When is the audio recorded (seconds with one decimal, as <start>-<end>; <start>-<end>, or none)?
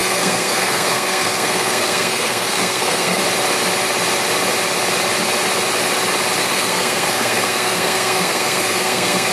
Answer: 3.2-6.4